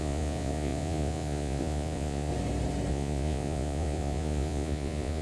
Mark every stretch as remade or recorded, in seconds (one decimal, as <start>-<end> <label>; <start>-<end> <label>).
0.0-2.3 remade; 2.3-2.9 recorded; 2.9-5.2 remade